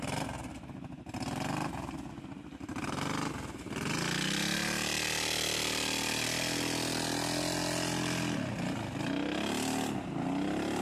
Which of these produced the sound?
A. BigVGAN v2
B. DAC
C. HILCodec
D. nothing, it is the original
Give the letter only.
D